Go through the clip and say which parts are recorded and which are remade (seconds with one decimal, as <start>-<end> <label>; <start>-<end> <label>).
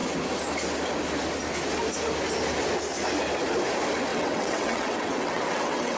0.0-4.1 recorded; 4.1-6.0 remade